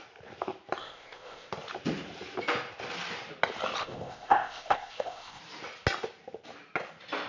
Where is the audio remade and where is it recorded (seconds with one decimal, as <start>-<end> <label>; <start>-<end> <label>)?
0.0-0.8 recorded; 0.8-1.5 remade; 1.5-3.8 recorded; 3.8-5.4 remade; 5.4-7.3 recorded